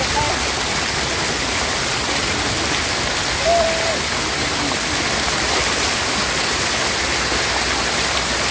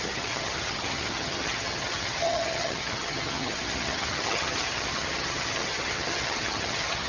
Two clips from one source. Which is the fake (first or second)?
second